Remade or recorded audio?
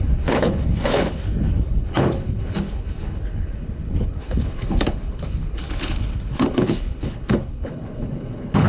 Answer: remade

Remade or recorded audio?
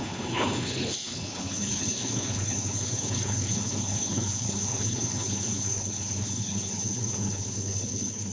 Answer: remade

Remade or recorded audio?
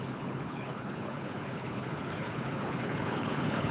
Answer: remade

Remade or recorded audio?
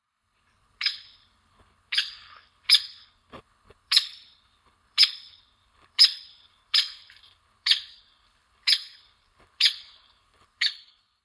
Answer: remade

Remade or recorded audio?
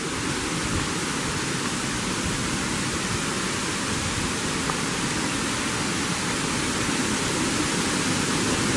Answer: recorded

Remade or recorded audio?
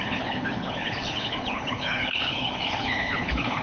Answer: remade